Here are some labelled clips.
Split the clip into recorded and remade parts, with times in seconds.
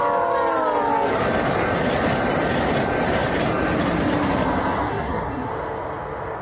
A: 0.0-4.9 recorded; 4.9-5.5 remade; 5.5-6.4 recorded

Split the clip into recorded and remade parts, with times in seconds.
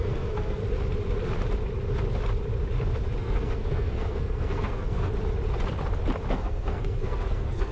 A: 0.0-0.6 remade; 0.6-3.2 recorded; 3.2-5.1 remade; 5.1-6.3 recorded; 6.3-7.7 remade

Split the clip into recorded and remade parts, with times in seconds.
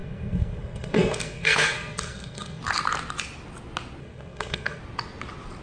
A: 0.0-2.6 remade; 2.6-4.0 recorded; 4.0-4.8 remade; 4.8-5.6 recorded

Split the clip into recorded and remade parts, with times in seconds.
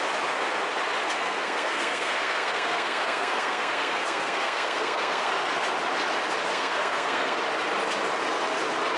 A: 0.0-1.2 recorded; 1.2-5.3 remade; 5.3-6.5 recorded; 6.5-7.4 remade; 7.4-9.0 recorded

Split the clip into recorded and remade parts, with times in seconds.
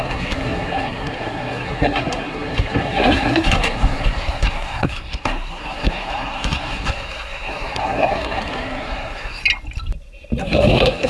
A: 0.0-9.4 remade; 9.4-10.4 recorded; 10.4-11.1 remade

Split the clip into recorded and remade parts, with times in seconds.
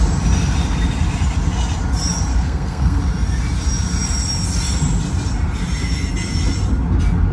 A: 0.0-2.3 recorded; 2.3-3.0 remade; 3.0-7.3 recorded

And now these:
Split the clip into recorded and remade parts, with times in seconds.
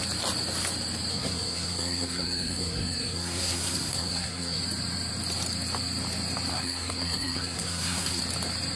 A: 0.0-1.1 recorded; 1.1-4.6 remade; 4.6-6.5 recorded; 6.5-8.2 remade; 8.2-8.8 recorded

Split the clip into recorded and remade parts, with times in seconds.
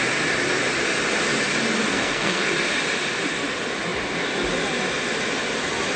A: 0.0-1.9 recorded; 1.9-2.5 remade; 2.5-6.0 recorded